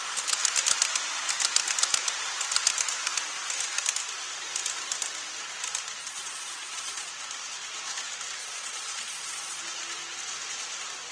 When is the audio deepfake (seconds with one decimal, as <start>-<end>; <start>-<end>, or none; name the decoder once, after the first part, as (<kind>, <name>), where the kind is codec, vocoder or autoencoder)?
6.0-7.1 (vocoder, Vocos); 8.4-9.6